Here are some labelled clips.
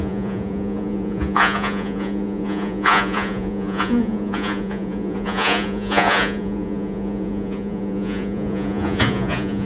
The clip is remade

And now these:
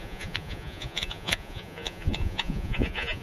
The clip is remade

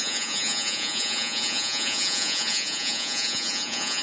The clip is remade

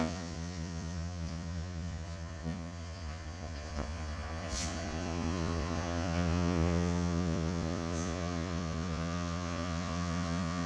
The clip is remade